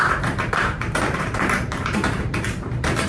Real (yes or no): no